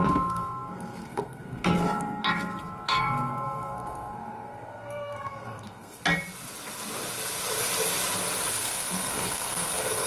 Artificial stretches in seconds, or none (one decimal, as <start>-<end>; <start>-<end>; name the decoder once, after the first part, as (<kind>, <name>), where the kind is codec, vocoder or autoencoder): 0.0-6.0 (codec, SNAC); 8.5-10.1